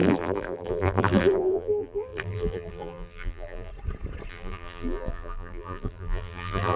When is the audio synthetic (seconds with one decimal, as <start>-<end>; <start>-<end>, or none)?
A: 0.0-3.7; 4.3-6.8